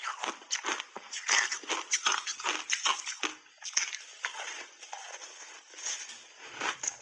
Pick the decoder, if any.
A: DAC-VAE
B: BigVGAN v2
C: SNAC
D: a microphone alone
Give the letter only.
D